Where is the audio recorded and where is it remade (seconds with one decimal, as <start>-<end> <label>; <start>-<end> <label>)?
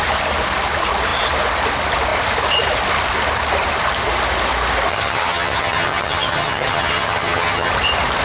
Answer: 0.0-4.9 recorded; 4.9-7.7 remade; 7.7-8.2 recorded